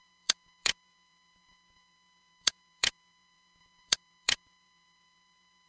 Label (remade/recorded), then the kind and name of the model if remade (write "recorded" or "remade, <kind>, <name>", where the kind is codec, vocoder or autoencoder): remade, vocoder, Vocos